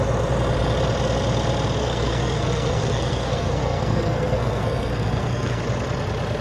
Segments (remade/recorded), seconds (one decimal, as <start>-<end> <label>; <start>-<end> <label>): 0.0-1.8 recorded; 1.8-5.6 remade; 5.6-6.4 recorded